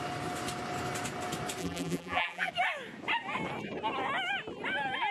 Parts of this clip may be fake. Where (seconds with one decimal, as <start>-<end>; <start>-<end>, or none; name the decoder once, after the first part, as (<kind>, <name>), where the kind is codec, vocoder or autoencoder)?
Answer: 1.6-2.5 (vocoder, BigVGAN v2)